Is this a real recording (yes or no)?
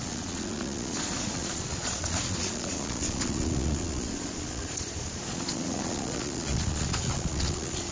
no